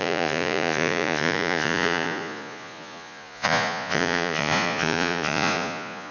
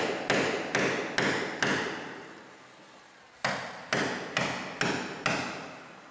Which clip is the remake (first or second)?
first